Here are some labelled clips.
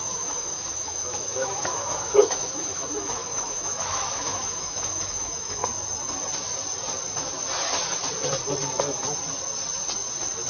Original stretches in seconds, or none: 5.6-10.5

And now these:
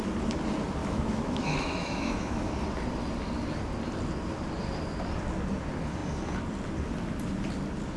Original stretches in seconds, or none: 0.0-0.8; 2.5-8.0

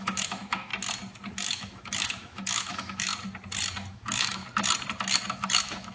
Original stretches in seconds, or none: 0.7-1.3; 3.1-3.9; 4.4-5.3

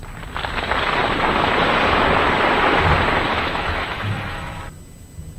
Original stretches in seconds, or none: 0.0-3.3; 4.5-5.4

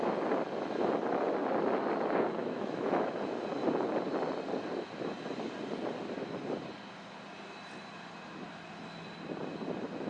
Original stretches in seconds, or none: 0.0-2.4; 3.1-10.1

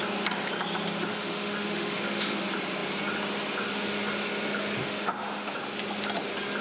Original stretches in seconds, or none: 0.0-1.1; 2.4-4.8; 5.5-6.6

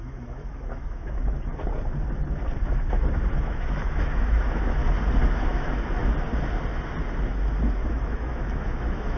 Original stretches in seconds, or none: 1.5-3.3; 4.8-5.3; 6.0-7.9

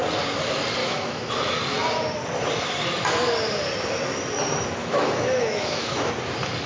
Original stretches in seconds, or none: 0.0-0.8; 1.3-4.8; 6.1-6.7